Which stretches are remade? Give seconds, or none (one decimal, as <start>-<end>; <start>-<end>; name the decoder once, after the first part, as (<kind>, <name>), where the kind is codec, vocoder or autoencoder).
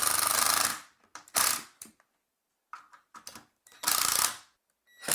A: 0.7-3.8 (vocoder, BigVGAN v2)